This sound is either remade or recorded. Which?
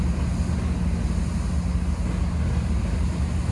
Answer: recorded